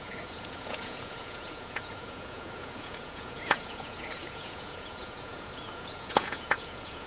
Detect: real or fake fake